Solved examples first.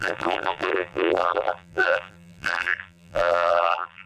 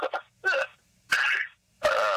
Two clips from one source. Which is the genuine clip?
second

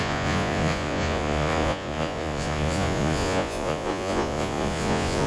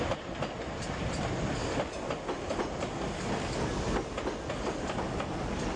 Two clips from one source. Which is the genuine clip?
second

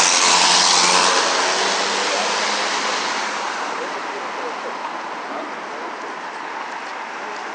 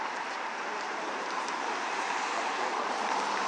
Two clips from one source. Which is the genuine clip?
first